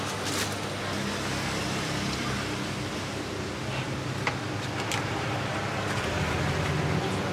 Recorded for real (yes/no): yes